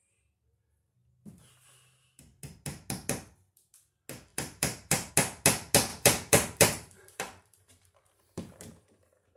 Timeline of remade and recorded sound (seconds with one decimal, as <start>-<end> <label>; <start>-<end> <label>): 0.0-4.3 recorded; 4.3-5.1 remade; 5.1-5.9 recorded; 5.9-8.6 remade; 8.6-9.4 recorded